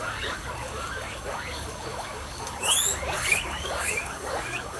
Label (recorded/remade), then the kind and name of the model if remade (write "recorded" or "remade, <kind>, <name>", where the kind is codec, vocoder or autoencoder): remade, codec, DAC